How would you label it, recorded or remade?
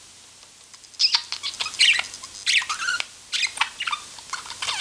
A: recorded